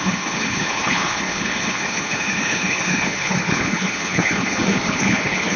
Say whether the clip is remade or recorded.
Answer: remade